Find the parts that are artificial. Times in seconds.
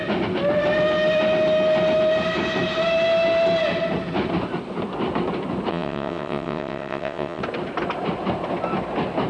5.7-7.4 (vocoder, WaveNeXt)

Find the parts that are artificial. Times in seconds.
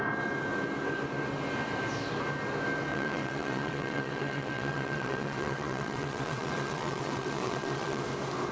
2.9-8.0 (vocoder, WaveNeXt)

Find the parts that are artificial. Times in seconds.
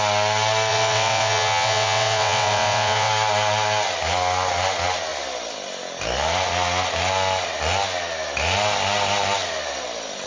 0.7-3.1 (vocoder, WaveNeXt)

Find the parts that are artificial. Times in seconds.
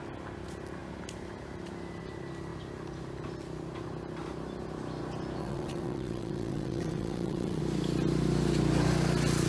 5.4-7.6 (vocoder, WaveNeXt)